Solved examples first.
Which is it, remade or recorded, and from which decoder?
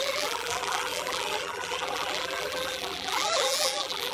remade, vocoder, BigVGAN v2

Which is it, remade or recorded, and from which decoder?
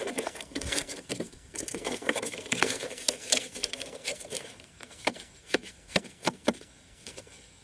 remade, codec, SNAC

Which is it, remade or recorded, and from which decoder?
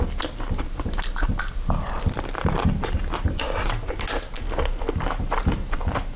recorded